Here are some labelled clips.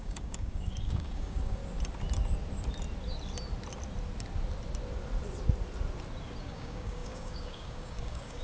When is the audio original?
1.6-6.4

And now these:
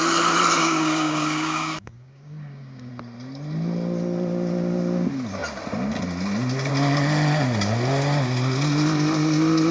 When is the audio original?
0.0-0.6; 2.9-9.7

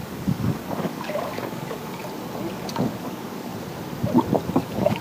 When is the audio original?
2.0-2.5; 3.5-4.5

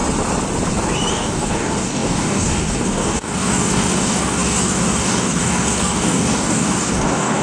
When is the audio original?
0.0-1.1

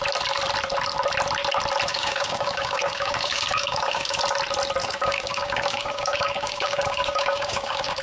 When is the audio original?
0.0-1.9; 4.2-4.8

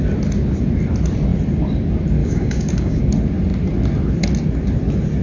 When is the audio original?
0.0-2.2; 3.0-5.2

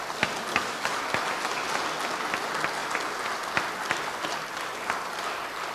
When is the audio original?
0.0-0.5; 1.0-5.7

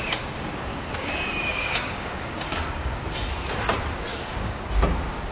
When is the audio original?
0.0-0.7; 2.9-4.1; 4.7-5.3